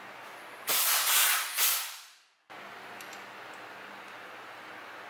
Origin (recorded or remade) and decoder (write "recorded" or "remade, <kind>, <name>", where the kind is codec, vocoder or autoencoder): recorded